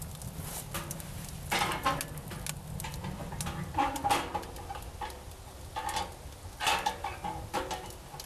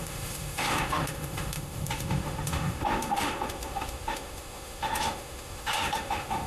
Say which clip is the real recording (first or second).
first